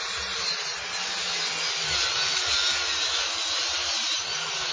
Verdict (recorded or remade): recorded